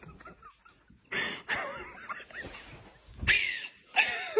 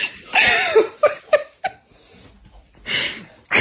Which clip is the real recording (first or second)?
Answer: first